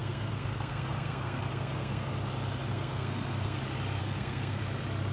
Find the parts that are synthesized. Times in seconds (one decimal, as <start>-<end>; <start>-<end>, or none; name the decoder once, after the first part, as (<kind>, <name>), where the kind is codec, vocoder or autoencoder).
0.0-2.1 (codec, SNAC); 2.7-3.6; 4.0-4.6